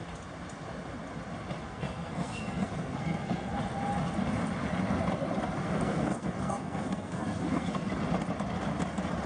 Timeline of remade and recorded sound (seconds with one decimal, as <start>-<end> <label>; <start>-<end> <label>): 0.0-1.7 recorded; 1.7-3.5 remade; 3.5-5.6 recorded; 5.6-7.9 remade; 7.9-9.3 recorded